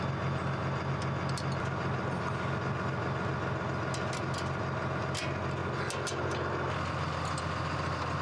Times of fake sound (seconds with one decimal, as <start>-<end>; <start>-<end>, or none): none